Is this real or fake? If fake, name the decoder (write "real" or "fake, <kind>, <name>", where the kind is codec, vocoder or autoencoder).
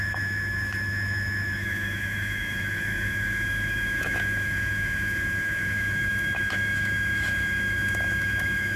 fake, autoencoder, DAC-VAE